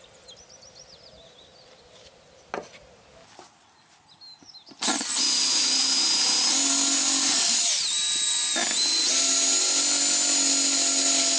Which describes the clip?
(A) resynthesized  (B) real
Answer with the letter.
B